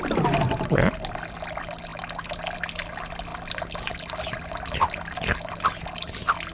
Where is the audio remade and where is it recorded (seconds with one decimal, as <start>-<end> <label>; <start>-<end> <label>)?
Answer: 0.0-6.5 recorded